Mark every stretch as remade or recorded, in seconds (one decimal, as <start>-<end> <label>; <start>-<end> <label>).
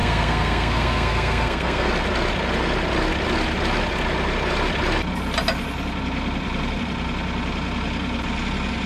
0.0-1.9 remade; 1.9-8.9 recorded